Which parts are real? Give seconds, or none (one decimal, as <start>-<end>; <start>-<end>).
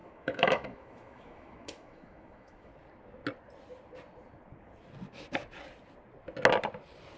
2.7-7.2